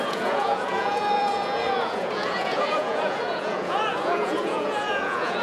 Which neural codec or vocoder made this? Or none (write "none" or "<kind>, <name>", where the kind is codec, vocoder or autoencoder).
vocoder, Vocos